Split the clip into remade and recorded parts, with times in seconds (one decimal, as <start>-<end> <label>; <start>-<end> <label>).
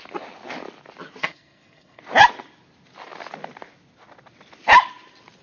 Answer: 0.0-1.2 recorded; 1.2-2.0 remade; 2.0-5.4 recorded